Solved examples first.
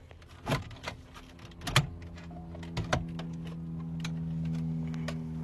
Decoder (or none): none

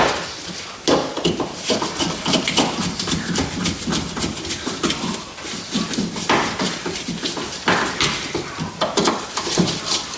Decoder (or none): vocoder, BigVGAN v2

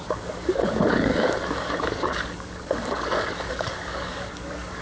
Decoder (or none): codec, DAC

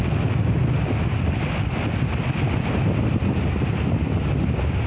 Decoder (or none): none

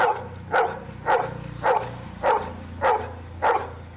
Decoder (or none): none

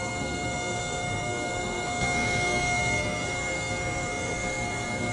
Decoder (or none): codec, SNAC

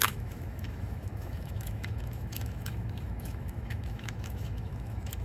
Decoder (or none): autoencoder, DAC-VAE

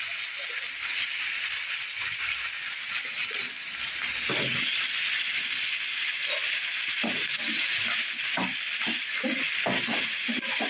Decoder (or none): none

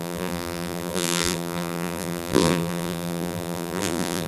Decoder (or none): vocoder, BigVGAN v2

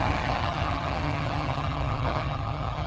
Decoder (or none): vocoder, HiFi-GAN